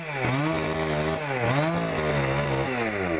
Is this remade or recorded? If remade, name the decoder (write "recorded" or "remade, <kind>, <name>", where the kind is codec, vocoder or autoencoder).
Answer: recorded